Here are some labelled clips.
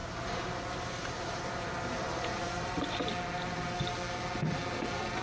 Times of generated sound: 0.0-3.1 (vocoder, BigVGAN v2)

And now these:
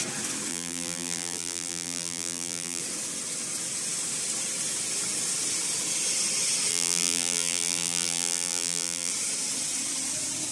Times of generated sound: 0.5-2.8 (vocoder, BigVGAN v2); 6.7-9.1

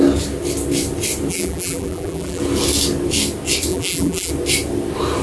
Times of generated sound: 1.3-2.4 (vocoder, BigVGAN v2); 3.7-4.3

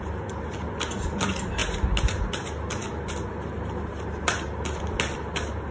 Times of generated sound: none

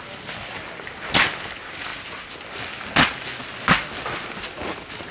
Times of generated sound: none

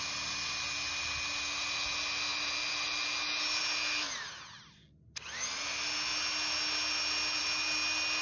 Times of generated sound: none